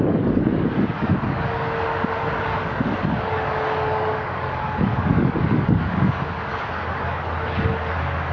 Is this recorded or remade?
remade